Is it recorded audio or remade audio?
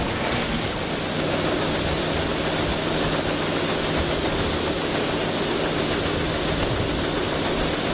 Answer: recorded